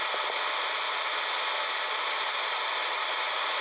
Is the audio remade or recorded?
recorded